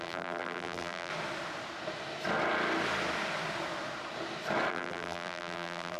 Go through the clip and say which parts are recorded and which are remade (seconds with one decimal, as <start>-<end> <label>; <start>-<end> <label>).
0.0-1.1 remade; 1.1-4.7 recorded; 4.7-6.0 remade